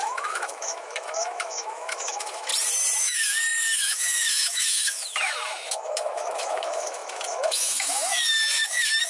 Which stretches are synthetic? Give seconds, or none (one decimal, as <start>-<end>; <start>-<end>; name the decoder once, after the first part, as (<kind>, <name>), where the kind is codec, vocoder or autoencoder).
0.0-2.5 (autoencoder, DAC-VAE); 3.0-9.1

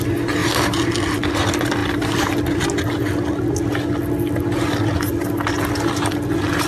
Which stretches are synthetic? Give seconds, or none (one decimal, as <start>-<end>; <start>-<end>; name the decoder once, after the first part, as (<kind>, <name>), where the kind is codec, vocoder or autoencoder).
none